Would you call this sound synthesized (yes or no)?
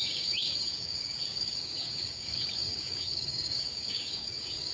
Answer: yes